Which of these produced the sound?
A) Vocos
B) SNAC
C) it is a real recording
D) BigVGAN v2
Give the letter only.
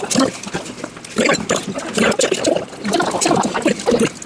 C